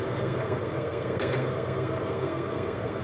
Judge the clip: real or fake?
fake